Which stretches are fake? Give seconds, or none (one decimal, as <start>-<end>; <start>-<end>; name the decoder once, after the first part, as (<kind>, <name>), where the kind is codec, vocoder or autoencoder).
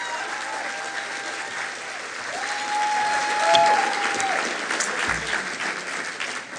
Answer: none